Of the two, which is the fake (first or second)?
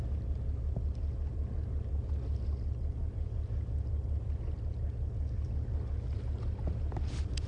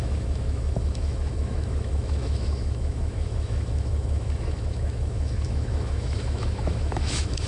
second